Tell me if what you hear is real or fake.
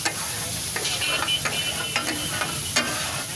real